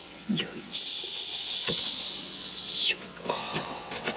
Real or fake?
fake